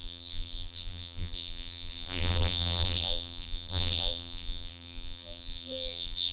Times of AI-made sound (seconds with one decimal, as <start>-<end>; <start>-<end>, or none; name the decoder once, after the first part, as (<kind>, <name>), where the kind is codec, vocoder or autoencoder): 0.0-6.3 (vocoder, BigVGAN v2)